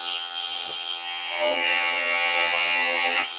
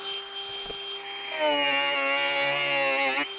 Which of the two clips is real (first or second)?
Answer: second